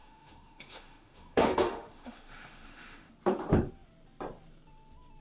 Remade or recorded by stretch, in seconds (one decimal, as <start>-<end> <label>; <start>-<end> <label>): 0.0-3.1 remade; 3.1-5.2 recorded